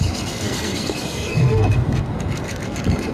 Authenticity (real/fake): fake